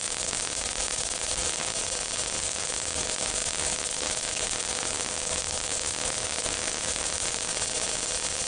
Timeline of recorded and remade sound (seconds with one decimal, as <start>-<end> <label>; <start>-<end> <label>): 0.0-1.7 remade; 1.7-2.4 recorded; 2.4-7.5 remade; 7.5-8.5 recorded